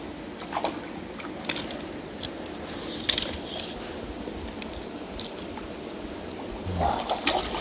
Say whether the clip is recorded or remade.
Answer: recorded